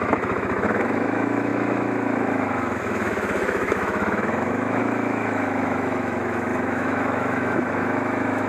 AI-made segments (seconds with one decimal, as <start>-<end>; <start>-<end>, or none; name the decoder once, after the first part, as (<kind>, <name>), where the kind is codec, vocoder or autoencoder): 0.0-8.5 (autoencoder, DAC-VAE)